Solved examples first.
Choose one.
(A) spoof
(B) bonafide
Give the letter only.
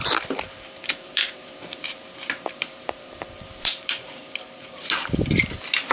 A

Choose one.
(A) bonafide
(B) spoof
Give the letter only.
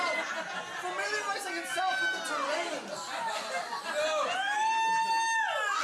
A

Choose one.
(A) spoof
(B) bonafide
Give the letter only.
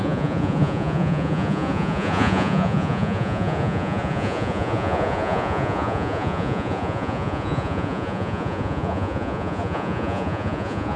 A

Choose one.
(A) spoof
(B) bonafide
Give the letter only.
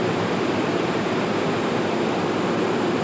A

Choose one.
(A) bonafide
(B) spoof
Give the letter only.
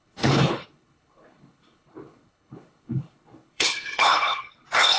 B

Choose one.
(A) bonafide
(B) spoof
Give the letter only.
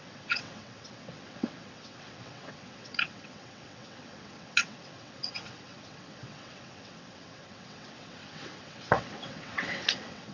B